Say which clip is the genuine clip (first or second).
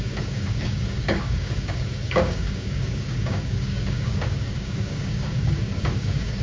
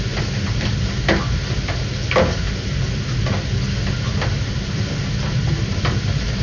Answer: second